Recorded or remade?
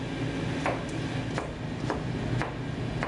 recorded